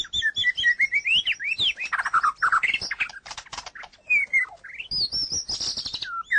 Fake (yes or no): no